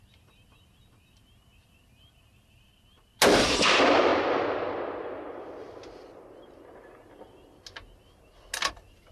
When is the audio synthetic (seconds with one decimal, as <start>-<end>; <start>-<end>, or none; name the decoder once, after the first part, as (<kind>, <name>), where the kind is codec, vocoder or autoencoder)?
0.0-2.7 (vocoder, BigVGAN v2); 3.4-4.1; 8.7-9.1